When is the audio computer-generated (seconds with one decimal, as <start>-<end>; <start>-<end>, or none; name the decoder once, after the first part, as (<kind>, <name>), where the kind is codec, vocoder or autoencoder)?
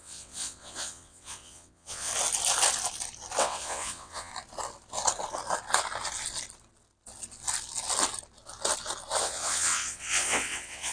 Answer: 0.0-2.1 (vocoder, WaveNeXt); 3.4-4.3; 9.2-10.9